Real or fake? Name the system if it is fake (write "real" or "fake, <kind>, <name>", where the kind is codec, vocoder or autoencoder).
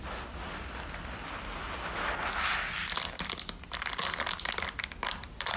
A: real